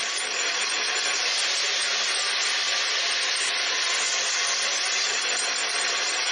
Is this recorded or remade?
recorded